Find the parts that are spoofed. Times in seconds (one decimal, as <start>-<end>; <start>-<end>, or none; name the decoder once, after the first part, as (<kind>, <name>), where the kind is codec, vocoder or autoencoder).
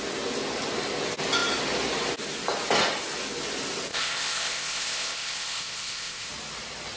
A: 3.9-6.3 (codec, ZipCodec)